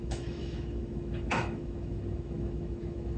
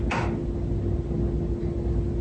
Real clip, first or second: second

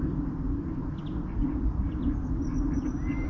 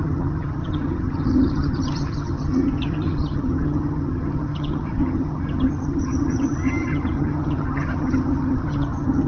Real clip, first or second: first